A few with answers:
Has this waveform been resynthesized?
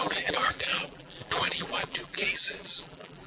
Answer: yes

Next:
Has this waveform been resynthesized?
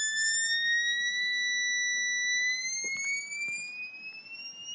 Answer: no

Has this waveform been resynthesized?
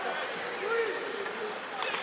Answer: no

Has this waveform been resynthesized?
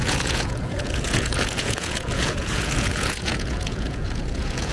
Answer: yes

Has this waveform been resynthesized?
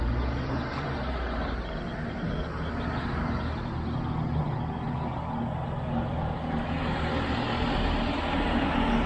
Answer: no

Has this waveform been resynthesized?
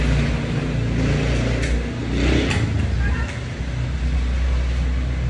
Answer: no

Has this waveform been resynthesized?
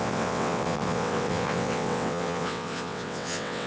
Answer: yes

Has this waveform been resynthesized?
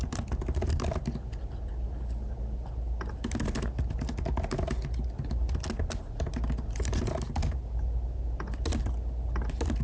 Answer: no